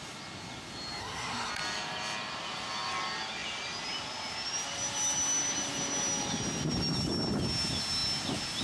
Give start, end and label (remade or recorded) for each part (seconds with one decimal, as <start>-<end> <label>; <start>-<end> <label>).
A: 0.0-1.0 recorded; 1.0-1.5 remade; 1.5-8.6 recorded